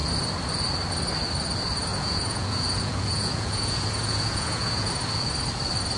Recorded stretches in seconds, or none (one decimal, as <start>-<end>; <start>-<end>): 0.0-1.9; 4.9-6.0